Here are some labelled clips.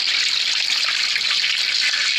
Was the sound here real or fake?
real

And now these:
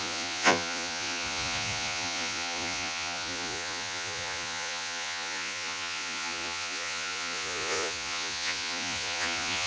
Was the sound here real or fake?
fake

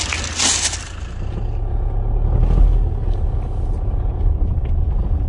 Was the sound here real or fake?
real